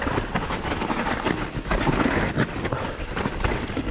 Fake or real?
real